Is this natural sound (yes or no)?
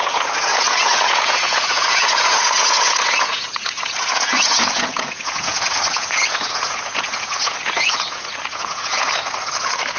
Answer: no